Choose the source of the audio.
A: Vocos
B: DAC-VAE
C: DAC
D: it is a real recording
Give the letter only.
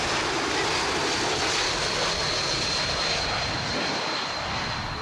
D